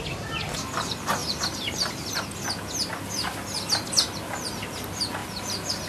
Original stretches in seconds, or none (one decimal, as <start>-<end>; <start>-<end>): 0.0-5.9

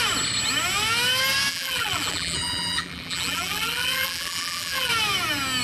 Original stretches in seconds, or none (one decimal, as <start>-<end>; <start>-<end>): 0.0-1.5; 4.9-5.6

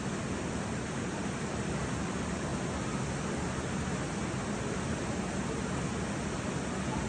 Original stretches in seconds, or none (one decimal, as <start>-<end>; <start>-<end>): 2.5-6.0

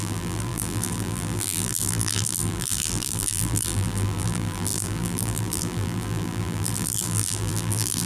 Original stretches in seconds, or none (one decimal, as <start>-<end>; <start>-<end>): none

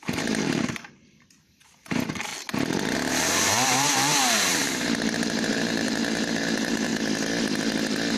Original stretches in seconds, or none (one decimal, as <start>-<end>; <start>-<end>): 2.3-3.1; 6.9-8.2